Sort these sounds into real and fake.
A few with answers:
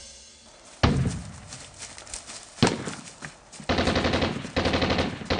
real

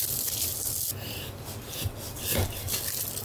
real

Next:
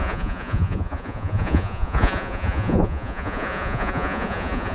fake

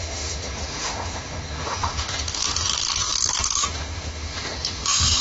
fake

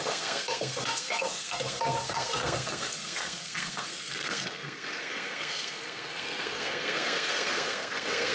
fake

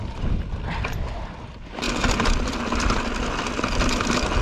real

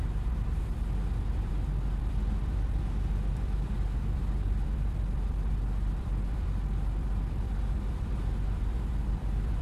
fake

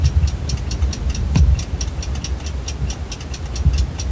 real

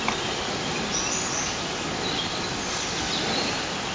real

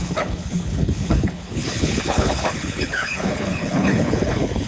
fake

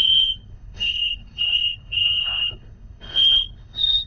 fake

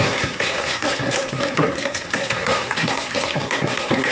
fake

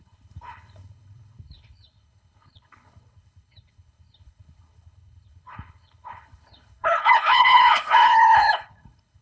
fake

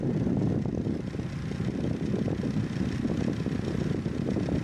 real